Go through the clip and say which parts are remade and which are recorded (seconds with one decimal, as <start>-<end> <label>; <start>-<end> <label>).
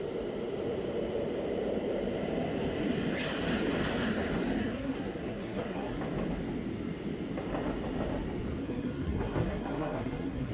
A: 0.0-4.6 recorded; 4.6-6.0 remade; 6.0-8.6 recorded; 8.6-10.5 remade